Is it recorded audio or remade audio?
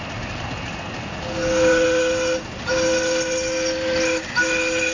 recorded